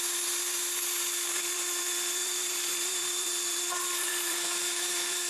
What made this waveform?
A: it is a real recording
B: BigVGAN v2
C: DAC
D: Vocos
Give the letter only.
B